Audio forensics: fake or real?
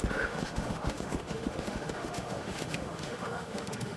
fake